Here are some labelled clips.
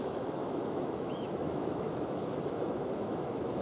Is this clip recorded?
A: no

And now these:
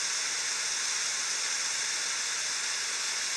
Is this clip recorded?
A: yes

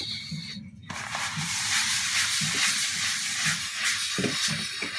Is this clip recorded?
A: yes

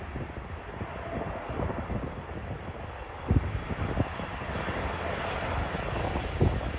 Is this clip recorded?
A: yes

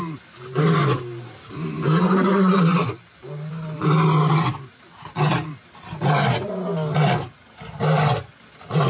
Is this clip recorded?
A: yes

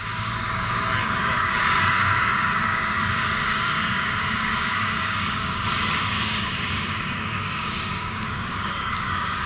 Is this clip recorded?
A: no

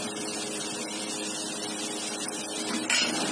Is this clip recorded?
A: yes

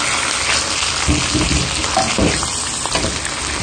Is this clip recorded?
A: yes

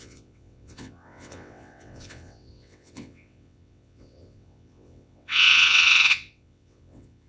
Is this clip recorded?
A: no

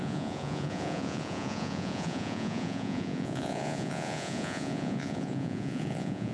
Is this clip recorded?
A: no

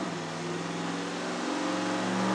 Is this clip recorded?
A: yes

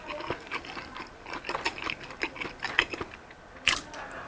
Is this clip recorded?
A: yes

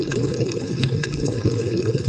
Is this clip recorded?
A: no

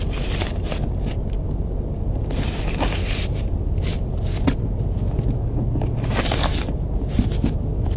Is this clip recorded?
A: yes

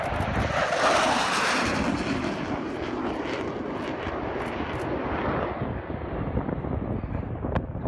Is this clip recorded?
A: yes